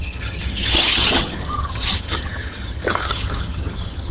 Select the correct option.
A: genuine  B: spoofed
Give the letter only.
B